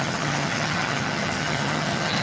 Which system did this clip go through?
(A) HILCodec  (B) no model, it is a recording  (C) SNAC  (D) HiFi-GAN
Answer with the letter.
D